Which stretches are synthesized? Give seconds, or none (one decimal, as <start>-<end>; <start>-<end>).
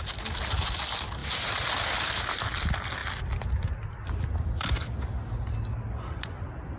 none